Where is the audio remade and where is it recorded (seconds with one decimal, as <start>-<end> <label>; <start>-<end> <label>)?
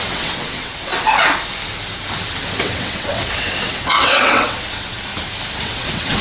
0.0-0.9 remade; 0.9-2.6 recorded; 2.6-5.1 remade; 5.1-5.6 recorded; 5.6-6.2 remade